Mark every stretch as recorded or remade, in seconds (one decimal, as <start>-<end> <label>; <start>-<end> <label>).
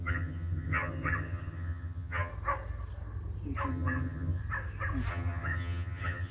0.0-2.3 remade; 2.3-3.7 recorded; 3.7-4.4 remade; 4.4-5.1 recorded; 5.1-6.3 remade